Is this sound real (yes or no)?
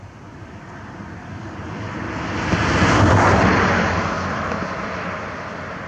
yes